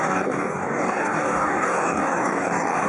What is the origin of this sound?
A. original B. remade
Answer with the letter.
B